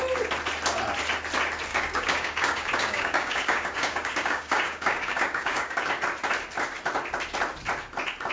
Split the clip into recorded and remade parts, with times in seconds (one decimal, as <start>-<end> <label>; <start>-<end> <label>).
0.0-1.7 recorded; 1.7-5.9 remade; 5.9-8.3 recorded